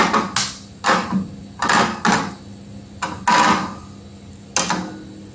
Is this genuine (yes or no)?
yes